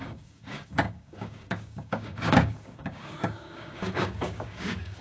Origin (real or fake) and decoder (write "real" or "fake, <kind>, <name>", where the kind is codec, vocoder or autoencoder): fake, codec, DAC